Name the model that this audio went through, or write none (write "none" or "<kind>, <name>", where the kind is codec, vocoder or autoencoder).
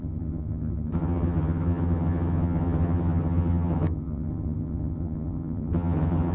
vocoder, HiFi-GAN